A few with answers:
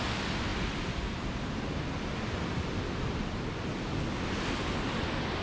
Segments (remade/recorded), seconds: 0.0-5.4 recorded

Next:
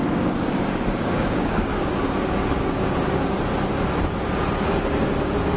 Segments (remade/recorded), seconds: 0.0-3.4 remade; 3.4-5.6 recorded

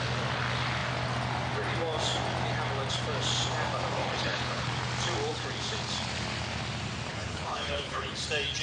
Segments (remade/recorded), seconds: 0.0-4.0 recorded; 4.0-4.7 remade; 4.7-7.1 recorded; 7.1-8.2 remade; 8.2-8.6 recorded

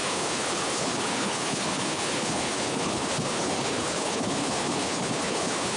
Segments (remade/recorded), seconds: 0.0-5.8 remade

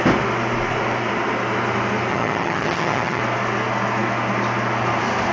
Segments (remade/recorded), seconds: 0.0-2.1 recorded; 2.1-3.2 remade; 3.2-5.3 recorded

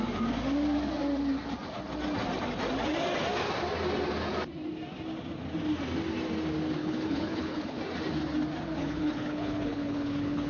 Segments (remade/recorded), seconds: 0.0-6.8 recorded; 6.8-7.8 remade; 7.8-8.8 recorded; 8.8-10.5 remade